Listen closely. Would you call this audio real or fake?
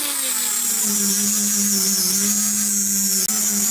real